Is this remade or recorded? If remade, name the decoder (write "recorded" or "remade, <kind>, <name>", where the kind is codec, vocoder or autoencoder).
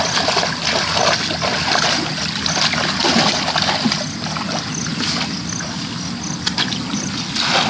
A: recorded